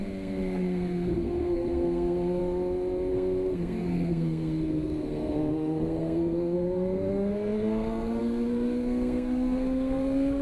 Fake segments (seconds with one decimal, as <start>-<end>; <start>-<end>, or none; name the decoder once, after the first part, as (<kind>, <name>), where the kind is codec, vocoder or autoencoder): 0.0-2.4 (codec, SNAC); 3.1-10.4